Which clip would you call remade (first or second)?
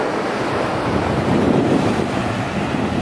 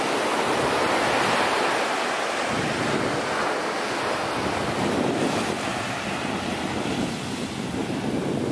first